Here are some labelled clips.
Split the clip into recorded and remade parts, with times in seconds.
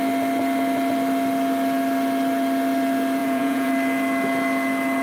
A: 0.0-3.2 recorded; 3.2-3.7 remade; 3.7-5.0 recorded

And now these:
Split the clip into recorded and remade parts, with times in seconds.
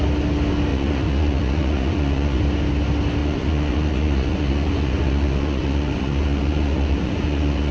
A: 0.0-0.7 recorded; 0.7-2.4 remade; 2.4-3.2 recorded; 3.2-7.7 remade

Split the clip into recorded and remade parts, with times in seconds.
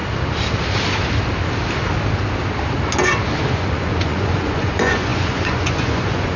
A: 0.0-3.5 recorded; 3.5-6.4 remade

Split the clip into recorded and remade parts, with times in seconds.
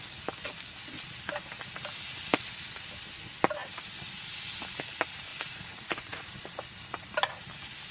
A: 0.0-5.3 recorded; 5.3-6.3 remade; 6.3-7.9 recorded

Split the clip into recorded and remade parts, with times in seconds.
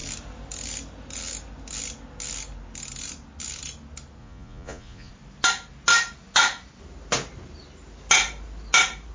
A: 0.0-4.2 recorded; 4.2-5.1 remade; 5.1-9.1 recorded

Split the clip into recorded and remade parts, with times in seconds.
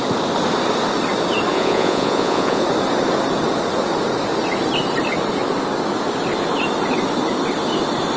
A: 0.0-1.5 recorded; 1.5-2.6 remade; 2.6-8.2 recorded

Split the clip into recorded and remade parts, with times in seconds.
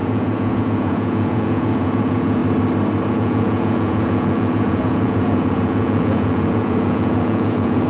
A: 0.0-2.4 remade; 2.4-3.1 recorded; 3.1-7.9 remade